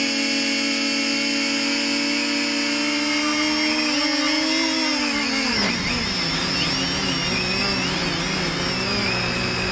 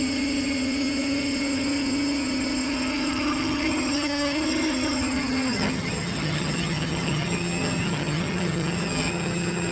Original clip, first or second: first